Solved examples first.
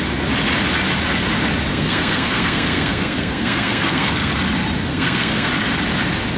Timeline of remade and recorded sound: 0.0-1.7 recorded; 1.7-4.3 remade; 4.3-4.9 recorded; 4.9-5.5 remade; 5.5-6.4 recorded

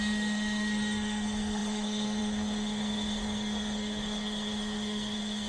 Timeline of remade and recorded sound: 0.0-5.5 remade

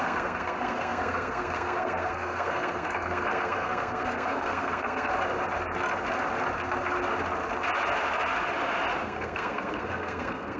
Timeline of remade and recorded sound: 0.0-5.1 remade; 5.1-9.0 recorded; 9.0-10.6 remade

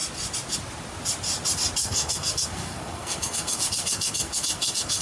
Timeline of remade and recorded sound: 0.0-1.8 recorded; 1.8-5.0 remade

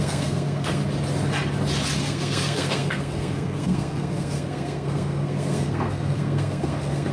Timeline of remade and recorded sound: 0.0-0.8 remade; 0.8-2.0 recorded; 2.0-7.1 remade